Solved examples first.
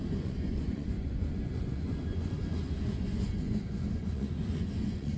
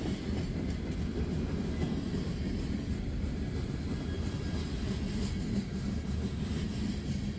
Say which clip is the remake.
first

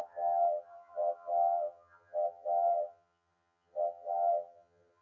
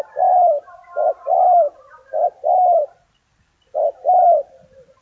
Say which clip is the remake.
first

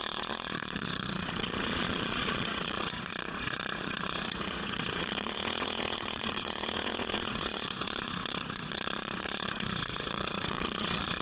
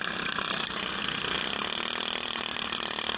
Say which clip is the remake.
first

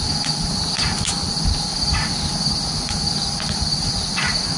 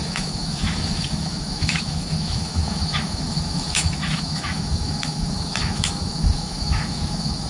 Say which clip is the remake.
second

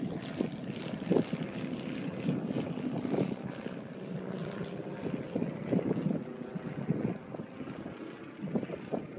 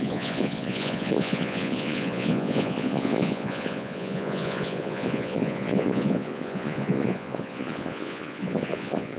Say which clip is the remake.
second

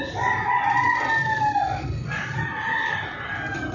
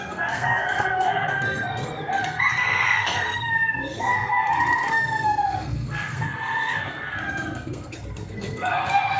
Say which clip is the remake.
second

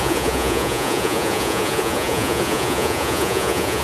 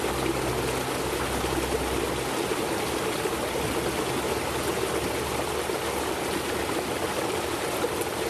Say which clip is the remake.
first